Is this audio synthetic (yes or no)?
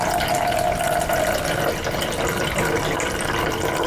no